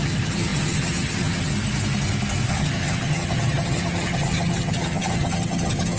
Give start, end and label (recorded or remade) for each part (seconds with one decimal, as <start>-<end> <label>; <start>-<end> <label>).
0.0-1.5 remade; 1.5-2.5 recorded; 2.5-6.0 remade